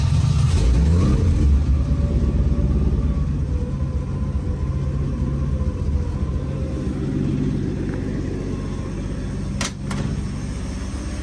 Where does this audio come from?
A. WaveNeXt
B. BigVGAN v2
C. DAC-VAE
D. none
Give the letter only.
D